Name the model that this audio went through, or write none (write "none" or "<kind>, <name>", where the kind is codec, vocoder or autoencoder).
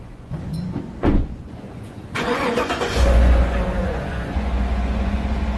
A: vocoder, Vocos